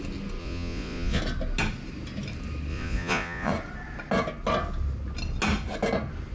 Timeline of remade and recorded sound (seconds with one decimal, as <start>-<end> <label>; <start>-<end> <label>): 0.0-0.4 recorded; 0.4-1.2 remade; 1.2-2.7 recorded; 2.7-3.5 remade; 3.5-6.3 recorded